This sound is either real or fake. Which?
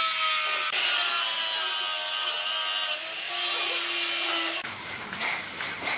real